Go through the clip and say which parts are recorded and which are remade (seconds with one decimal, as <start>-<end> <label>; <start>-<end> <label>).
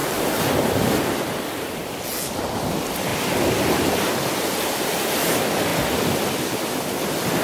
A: 0.0-2.0 remade; 2.0-7.4 recorded